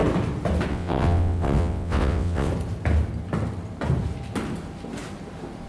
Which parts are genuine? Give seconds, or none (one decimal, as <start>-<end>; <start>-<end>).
0.0-0.7; 2.5-5.7